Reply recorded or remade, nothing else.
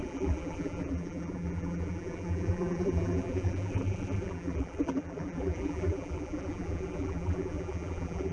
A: remade